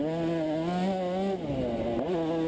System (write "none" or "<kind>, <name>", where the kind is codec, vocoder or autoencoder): none